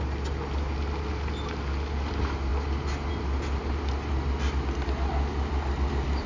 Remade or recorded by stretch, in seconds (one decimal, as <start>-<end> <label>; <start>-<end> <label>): 0.0-6.3 recorded